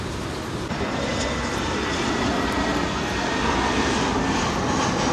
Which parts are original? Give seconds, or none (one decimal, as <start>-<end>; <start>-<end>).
1.1-2.1; 2.7-5.1

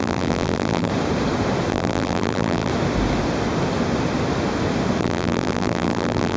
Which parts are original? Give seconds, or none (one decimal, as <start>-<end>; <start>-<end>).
0.9-1.7; 2.7-5.0

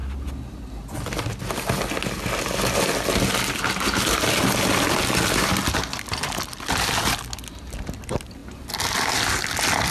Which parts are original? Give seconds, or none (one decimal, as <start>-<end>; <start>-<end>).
0.0-9.9

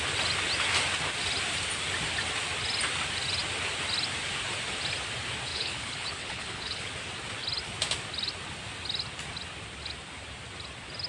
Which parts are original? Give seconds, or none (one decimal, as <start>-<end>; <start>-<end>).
0.0-5.5; 6.9-11.1

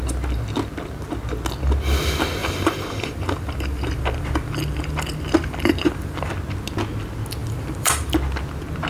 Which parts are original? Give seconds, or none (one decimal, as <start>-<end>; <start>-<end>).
0.0-2.4; 6.3-7.4; 8.1-8.9

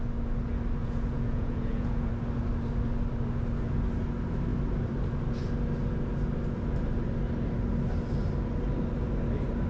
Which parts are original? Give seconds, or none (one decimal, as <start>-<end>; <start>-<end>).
0.0-0.8; 2.1-9.7

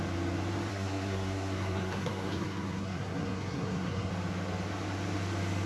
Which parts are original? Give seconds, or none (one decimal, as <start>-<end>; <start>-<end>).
0.0-0.7; 4.1-5.7

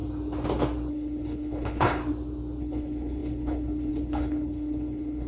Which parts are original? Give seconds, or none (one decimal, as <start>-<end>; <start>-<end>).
0.0-0.9; 2.0-2.6